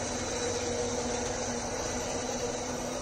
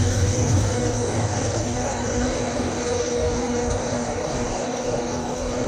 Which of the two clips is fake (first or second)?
second